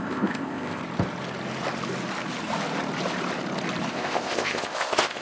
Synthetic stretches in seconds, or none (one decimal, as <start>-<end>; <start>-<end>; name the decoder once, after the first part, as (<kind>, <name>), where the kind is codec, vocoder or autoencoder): 0.0-0.8 (codec, ZipCodec); 3.9-5.2